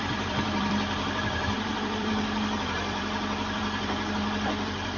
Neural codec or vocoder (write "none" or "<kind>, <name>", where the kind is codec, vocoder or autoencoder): vocoder, BigVGAN v2